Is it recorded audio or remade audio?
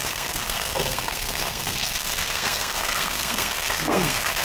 remade